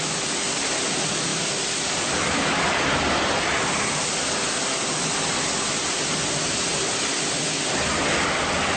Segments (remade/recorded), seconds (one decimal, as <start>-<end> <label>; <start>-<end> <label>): 0.0-1.3 recorded; 1.3-4.3 remade; 4.3-6.7 recorded; 6.7-7.7 remade; 7.7-8.8 recorded